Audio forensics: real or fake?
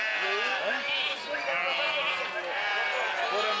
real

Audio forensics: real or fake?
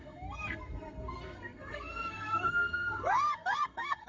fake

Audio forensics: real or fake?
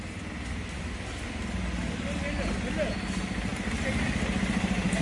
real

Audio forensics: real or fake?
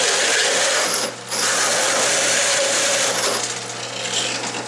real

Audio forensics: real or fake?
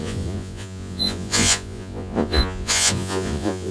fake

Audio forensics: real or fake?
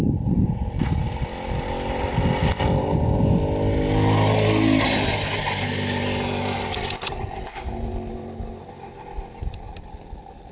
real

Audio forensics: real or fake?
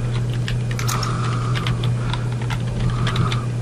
real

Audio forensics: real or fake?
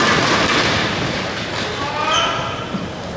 real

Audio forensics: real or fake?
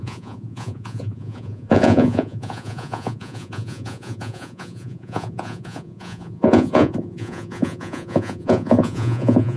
fake